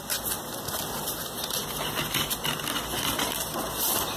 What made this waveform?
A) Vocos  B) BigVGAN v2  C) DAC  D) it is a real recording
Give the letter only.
D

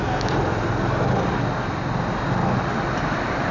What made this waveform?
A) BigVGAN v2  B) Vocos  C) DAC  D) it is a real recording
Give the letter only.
D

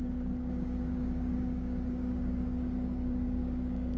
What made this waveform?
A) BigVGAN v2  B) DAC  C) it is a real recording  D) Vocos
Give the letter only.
B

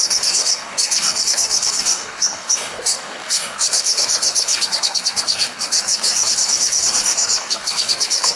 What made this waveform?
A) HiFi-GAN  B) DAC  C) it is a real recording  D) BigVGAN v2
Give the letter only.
B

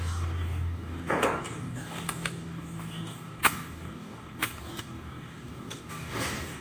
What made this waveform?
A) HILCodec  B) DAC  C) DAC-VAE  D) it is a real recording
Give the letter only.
B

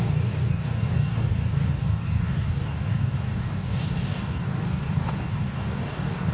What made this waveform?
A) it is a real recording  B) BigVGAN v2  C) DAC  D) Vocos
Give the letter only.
C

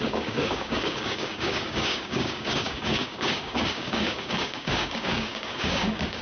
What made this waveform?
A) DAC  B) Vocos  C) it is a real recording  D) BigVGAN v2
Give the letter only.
A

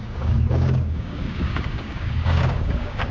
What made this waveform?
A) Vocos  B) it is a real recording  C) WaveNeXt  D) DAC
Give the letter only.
D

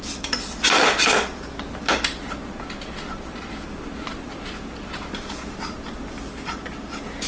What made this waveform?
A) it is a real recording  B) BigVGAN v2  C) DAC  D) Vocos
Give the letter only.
A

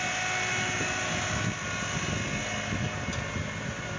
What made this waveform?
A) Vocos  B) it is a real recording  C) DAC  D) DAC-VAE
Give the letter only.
B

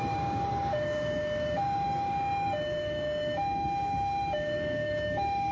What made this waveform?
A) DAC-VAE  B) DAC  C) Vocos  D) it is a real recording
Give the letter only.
B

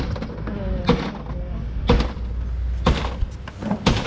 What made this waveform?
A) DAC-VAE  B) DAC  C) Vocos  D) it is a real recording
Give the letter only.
D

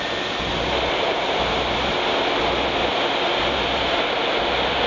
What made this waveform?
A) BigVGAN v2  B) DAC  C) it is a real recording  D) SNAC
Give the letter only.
C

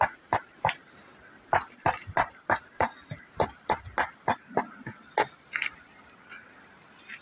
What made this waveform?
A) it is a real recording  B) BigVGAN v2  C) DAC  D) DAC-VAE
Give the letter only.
A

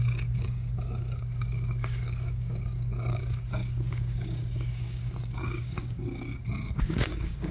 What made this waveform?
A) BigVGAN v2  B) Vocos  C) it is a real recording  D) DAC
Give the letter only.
D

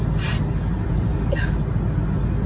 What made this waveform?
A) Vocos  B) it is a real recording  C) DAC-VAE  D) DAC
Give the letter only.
B